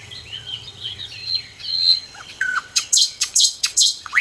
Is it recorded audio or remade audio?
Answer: remade